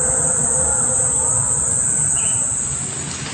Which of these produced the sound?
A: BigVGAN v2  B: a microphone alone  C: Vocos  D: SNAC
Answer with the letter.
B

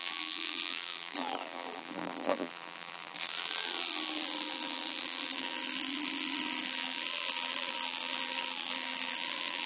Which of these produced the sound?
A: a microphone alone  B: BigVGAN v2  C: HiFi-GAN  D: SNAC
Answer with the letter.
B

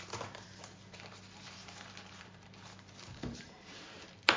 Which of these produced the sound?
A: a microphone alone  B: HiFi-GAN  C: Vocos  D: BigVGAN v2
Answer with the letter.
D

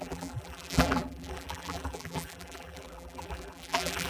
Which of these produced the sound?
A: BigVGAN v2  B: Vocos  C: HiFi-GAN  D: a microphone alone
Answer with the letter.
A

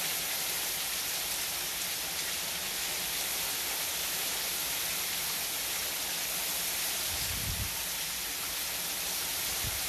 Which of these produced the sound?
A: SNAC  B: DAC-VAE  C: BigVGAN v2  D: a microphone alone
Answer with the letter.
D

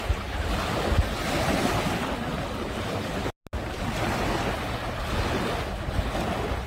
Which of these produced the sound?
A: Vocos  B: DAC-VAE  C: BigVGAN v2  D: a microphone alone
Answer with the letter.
D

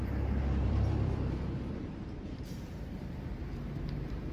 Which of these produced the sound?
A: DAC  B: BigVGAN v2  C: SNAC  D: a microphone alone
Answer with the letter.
B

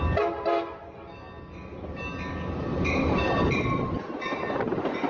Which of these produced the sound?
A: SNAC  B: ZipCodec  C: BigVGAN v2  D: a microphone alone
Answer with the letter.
D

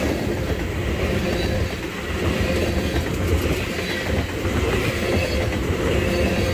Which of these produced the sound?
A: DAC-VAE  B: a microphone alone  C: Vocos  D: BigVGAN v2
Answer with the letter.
B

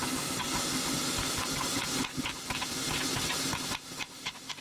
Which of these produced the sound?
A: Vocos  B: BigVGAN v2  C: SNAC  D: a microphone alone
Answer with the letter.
D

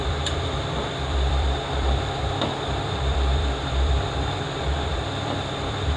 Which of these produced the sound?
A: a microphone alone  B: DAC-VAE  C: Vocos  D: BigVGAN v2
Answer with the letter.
D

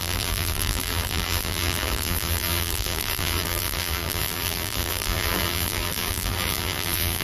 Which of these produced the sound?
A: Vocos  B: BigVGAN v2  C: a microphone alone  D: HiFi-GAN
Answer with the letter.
B